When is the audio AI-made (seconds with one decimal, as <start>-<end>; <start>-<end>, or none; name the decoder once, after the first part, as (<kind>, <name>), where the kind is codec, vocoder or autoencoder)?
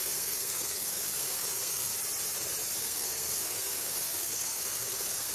0.0-1.9 (codec, SNAC); 2.8-5.3